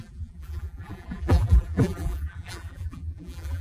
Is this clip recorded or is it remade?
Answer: remade